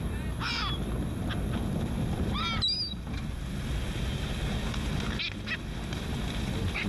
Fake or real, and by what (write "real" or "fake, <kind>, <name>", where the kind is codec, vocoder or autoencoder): real